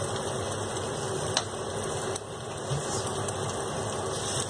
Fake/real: real